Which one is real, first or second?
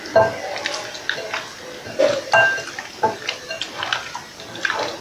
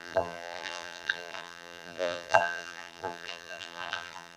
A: first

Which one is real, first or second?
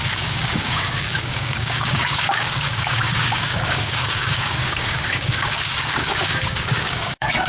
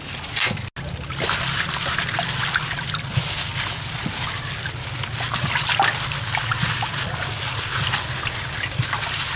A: second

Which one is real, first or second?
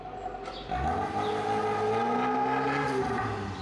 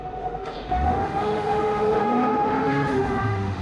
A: first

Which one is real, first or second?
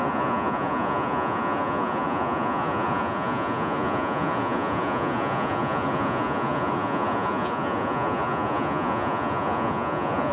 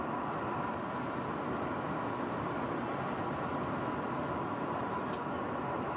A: second